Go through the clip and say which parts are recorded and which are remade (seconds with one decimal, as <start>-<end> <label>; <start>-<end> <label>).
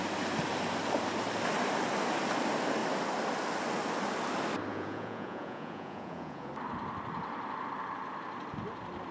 0.0-4.7 recorded; 4.7-6.5 remade; 6.5-9.1 recorded